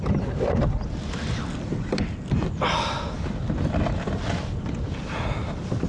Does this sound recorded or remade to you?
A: recorded